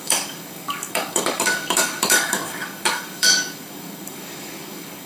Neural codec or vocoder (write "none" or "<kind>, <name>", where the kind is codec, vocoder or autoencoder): codec, DAC